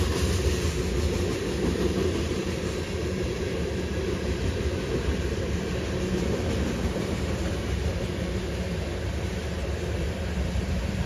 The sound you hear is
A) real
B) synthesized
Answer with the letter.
B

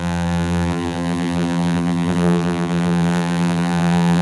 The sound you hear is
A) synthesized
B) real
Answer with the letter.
A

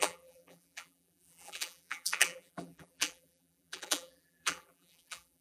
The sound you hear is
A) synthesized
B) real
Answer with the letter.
A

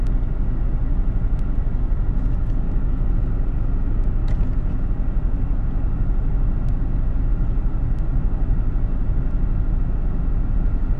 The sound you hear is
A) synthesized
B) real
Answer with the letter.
B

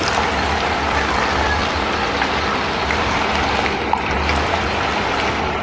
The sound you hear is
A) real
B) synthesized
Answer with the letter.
A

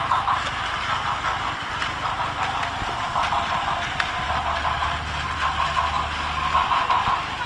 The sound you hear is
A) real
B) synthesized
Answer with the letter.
A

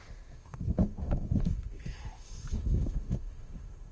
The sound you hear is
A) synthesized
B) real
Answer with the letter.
A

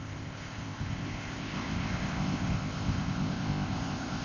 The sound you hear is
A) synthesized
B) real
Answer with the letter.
A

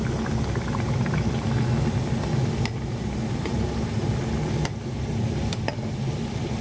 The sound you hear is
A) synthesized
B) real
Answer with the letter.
B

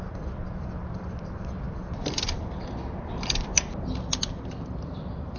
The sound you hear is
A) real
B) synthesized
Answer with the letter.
A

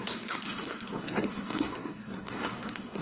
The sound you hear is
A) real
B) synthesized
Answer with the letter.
B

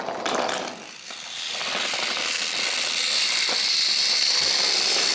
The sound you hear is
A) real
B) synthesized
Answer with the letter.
A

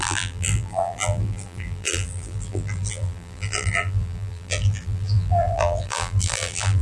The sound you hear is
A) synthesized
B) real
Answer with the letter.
A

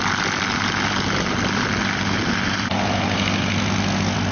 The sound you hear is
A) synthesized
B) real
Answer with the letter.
B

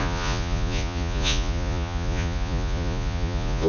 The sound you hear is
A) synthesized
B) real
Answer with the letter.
A